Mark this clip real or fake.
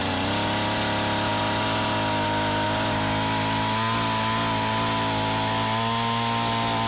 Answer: real